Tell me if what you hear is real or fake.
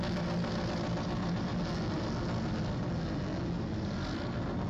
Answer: real